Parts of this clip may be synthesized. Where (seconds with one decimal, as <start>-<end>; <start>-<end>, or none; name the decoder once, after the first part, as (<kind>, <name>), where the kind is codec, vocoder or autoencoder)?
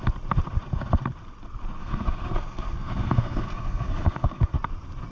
1.8-4.5 (codec, SNAC)